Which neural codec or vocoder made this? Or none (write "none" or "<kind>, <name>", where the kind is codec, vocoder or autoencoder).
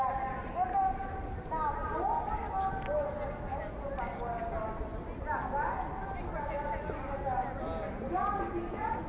none